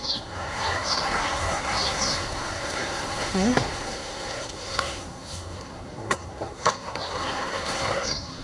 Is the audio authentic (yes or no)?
no